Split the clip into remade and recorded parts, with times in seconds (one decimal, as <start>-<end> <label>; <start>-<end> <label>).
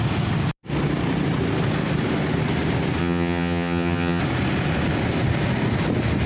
0.0-3.0 recorded; 3.0-4.2 remade; 4.2-6.3 recorded